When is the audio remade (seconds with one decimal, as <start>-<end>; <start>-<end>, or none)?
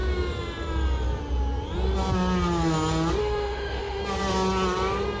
3.2-4.0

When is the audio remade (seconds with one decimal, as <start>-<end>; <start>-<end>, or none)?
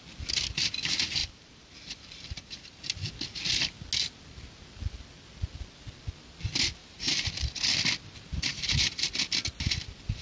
1.2-2.8; 6.8-7.6; 8.5-9.1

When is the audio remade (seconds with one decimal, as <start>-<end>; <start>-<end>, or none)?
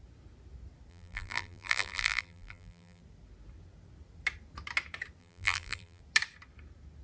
0.9-3.0; 5.2-6.0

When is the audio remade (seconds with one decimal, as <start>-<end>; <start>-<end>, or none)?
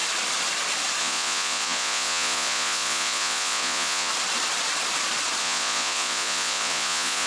1.0-4.1; 5.4-7.3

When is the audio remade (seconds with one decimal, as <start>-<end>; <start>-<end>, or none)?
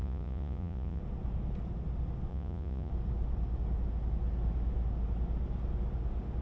0.0-1.0; 2.3-2.9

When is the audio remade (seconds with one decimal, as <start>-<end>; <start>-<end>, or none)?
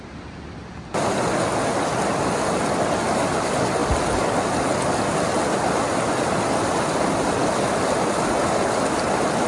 none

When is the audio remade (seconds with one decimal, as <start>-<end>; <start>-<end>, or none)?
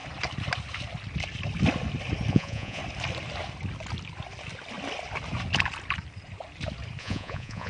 2.3-2.8; 7.0-7.7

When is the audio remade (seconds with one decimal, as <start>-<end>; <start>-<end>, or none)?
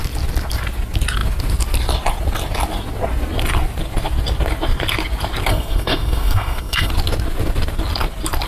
5.5-6.9